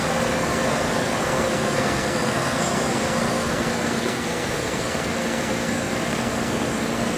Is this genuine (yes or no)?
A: no